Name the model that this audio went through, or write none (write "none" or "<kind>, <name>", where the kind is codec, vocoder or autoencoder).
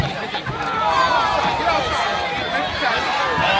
none